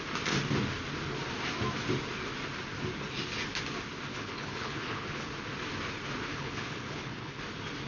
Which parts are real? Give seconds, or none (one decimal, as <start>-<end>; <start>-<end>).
0.0-4.1; 5.3-6.3; 7.4-7.9